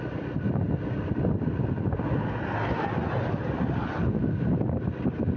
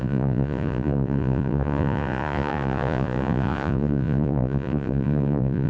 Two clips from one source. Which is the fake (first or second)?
second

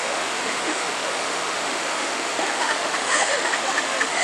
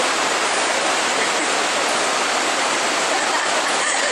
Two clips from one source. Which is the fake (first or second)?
first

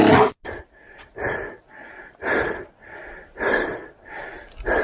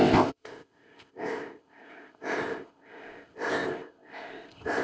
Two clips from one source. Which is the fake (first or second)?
second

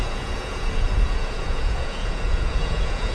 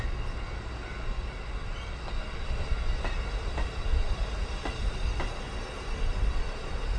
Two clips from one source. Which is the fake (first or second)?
first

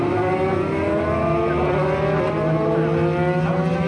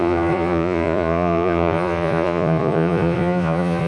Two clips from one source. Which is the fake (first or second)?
second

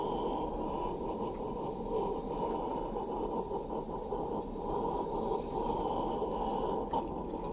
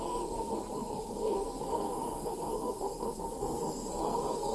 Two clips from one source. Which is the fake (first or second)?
second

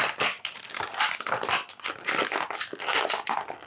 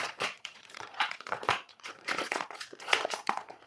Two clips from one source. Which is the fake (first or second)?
second